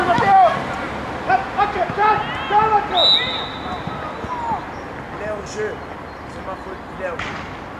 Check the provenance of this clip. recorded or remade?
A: recorded